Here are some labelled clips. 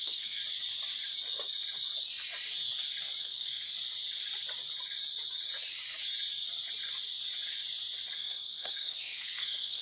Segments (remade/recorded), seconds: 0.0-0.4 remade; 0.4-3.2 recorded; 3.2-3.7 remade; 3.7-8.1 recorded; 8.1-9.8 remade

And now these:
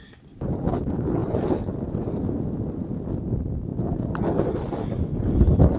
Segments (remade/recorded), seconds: 0.0-5.8 recorded

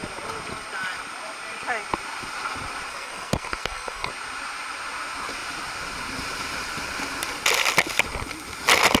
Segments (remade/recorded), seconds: 0.0-2.9 recorded; 2.9-4.1 remade; 4.1-9.0 recorded

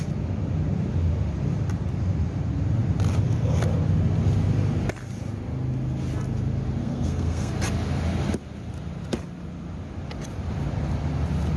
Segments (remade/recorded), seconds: 0.0-6.8 recorded; 6.8-7.5 remade; 7.5-11.6 recorded

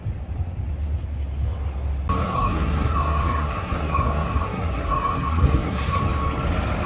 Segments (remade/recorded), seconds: 0.0-2.2 recorded; 2.2-6.0 remade; 6.0-6.9 recorded

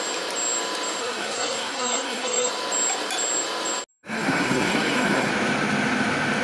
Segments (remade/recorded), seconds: 0.0-1.0 recorded; 1.0-2.5 remade; 2.5-3.9 recorded; 3.9-5.3 remade; 5.3-6.4 recorded

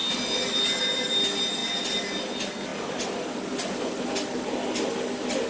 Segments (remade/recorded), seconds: 0.0-5.5 recorded

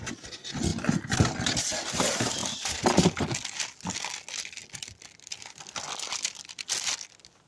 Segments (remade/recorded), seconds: 0.0-7.5 recorded